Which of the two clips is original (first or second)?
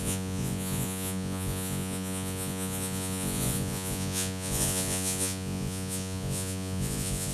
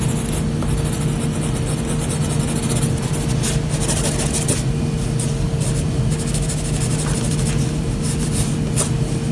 second